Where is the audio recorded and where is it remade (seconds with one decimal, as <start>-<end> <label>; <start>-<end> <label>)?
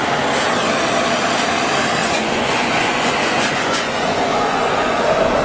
0.0-2.0 recorded; 2.0-5.4 remade